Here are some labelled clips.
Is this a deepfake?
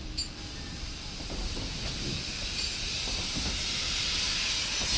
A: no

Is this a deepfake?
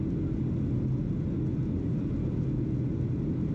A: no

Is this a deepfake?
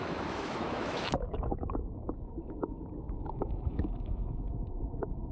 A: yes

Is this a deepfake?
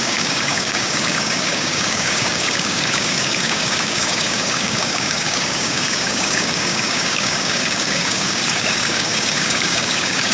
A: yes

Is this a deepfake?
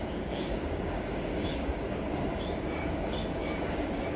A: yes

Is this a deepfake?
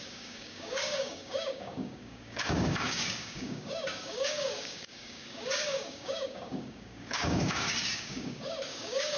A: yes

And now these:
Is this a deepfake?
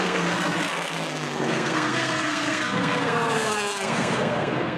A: yes